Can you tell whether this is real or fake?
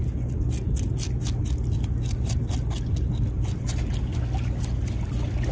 real